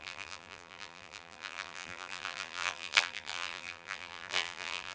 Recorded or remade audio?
remade